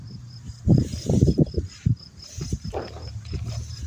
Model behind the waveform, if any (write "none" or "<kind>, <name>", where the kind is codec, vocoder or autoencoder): vocoder, BigVGAN v2